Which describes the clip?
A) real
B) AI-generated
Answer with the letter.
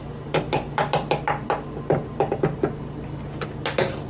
A